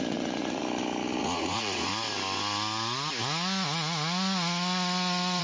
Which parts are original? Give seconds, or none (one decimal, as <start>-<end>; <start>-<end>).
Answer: 0.6-1.2; 1.9-5.4